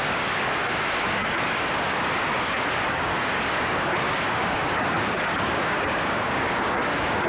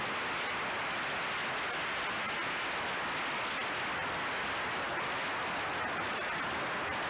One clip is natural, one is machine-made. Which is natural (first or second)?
second